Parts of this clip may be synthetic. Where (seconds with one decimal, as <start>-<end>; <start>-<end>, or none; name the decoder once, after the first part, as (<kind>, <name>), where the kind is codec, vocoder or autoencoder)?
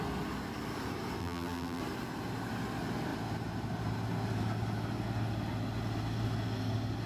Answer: 1.2-1.8 (vocoder, BigVGAN v2)